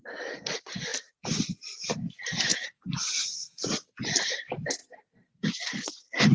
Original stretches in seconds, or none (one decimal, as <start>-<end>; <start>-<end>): 0.0-2.5; 3.1-4.8; 5.6-6.3